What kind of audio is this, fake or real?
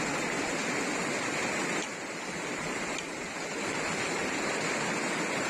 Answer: real